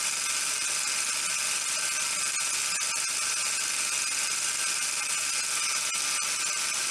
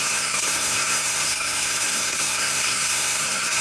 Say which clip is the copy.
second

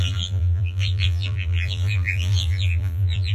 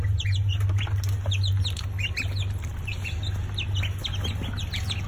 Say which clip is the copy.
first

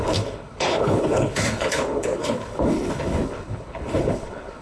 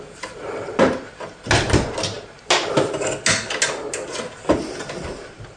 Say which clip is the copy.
first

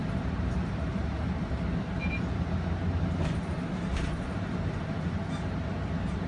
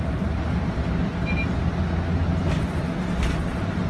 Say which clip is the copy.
first